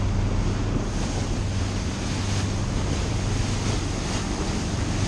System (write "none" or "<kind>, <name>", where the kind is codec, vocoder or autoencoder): none